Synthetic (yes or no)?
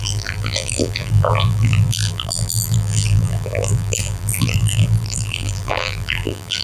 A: yes